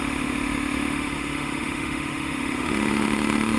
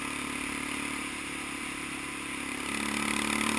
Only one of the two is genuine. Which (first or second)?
second